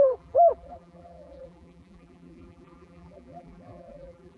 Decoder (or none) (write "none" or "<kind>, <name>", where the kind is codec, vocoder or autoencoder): vocoder, BigVGAN v2